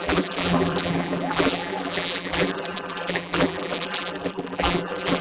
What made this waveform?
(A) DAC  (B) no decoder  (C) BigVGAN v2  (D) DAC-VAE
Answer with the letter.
C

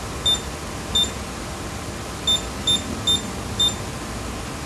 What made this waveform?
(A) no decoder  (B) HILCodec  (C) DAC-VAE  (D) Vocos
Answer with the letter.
A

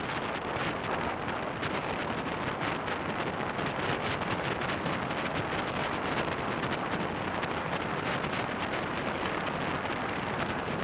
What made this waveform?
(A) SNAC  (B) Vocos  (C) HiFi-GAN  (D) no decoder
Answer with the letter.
D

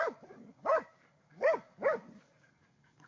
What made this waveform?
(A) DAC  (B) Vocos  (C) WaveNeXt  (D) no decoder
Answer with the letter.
A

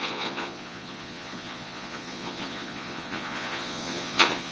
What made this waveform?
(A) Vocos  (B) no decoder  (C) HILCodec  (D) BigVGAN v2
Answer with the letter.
A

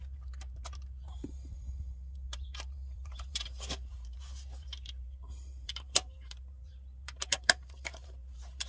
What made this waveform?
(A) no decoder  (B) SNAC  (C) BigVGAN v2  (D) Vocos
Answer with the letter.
C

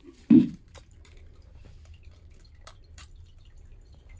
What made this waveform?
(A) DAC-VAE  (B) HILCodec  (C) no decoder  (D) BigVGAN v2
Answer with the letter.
D